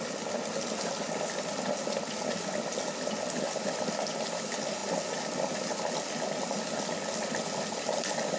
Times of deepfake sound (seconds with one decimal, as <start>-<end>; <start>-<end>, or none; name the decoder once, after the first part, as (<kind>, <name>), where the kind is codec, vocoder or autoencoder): none